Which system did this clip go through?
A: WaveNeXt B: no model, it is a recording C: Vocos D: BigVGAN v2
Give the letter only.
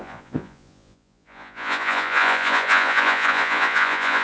C